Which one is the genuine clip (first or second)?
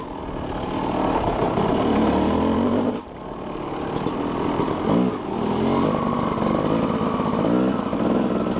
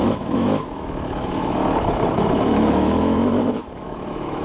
first